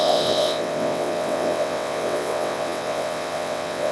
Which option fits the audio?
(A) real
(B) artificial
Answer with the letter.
B